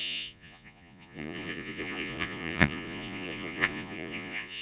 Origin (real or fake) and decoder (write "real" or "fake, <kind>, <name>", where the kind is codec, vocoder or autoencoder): fake, vocoder, Vocos